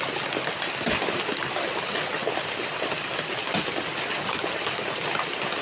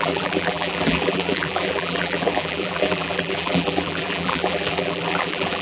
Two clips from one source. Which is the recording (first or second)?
first